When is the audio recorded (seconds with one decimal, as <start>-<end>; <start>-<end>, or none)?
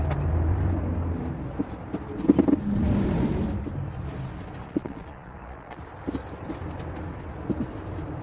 0.0-4.6; 5.8-8.2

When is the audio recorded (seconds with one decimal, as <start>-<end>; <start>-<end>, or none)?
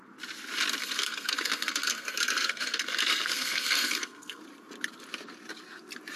0.0-0.8; 4.4-6.2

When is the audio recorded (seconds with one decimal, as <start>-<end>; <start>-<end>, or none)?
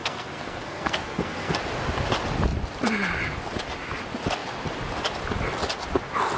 1.6-6.4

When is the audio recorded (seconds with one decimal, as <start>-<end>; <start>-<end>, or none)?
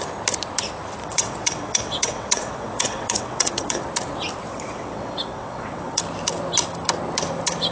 0.0-1.0; 3.8-4.5; 6.0-7.7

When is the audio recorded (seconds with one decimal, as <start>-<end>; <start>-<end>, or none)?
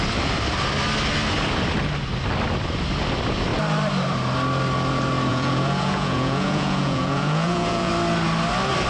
0.0-5.3; 7.9-8.9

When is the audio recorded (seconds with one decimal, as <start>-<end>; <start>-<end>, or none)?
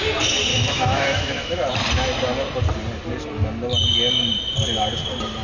0.0-0.5; 1.7-5.4